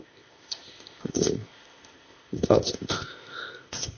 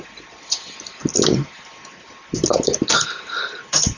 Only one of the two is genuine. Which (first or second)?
second